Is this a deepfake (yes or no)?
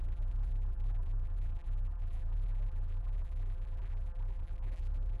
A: yes